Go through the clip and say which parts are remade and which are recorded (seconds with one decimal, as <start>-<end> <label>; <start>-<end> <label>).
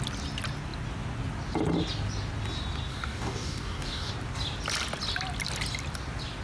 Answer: 0.0-2.9 recorded; 2.9-4.1 remade; 4.1-6.4 recorded